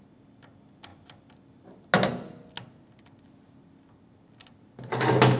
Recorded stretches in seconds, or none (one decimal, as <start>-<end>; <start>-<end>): 0.0-5.4